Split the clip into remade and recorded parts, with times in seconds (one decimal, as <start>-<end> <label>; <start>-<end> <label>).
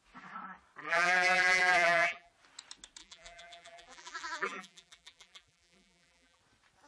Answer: 0.0-0.8 recorded; 0.8-2.3 remade; 2.3-3.0 recorded; 3.0-6.4 remade; 6.4-6.9 recorded